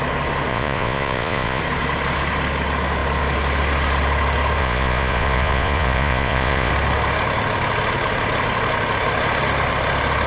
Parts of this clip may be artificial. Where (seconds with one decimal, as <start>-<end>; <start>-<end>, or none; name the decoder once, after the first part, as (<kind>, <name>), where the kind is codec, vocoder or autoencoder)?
0.5-1.6 (vocoder, Vocos); 4.6-6.7

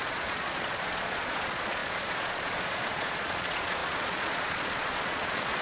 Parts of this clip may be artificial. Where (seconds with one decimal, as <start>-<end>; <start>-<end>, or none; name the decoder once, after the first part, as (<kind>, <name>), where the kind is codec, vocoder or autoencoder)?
0.0-5.6 (vocoder, Vocos)